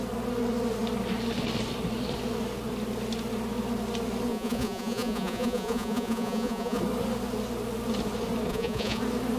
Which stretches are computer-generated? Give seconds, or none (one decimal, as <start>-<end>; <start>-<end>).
4.3-6.8; 8.5-9.0